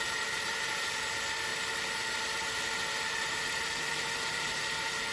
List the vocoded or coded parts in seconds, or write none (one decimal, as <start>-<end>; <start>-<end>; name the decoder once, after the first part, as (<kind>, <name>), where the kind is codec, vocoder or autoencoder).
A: 0.0-5.1 (vocoder, BigVGAN v2)